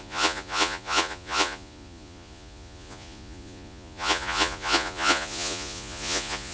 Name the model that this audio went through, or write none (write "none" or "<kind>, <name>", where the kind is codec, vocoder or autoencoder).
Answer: vocoder, Vocos